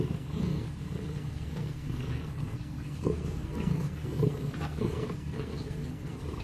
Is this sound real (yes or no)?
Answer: no